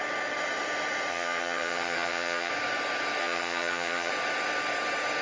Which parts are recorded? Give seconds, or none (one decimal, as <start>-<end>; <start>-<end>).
0.0-1.1; 2.5-3.2; 4.1-5.2